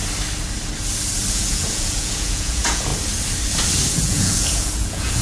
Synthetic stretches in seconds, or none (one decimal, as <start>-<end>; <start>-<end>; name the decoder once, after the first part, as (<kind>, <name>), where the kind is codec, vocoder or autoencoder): 1.3-2.9 (vocoder, Vocos); 3.9-5.2